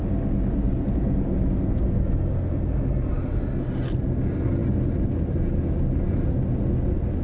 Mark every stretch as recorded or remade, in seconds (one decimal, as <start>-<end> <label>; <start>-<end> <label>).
0.0-7.2 recorded